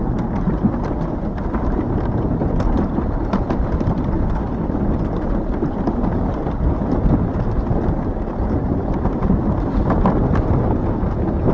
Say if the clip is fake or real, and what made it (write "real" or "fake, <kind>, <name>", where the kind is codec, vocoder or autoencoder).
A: real